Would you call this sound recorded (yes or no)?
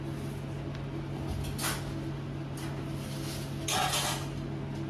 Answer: yes